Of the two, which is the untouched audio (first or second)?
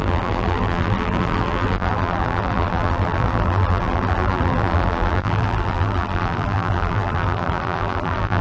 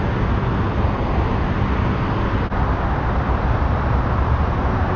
second